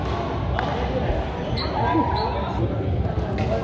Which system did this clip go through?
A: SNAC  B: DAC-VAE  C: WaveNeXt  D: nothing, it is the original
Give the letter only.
D